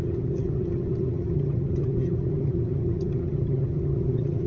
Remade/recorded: remade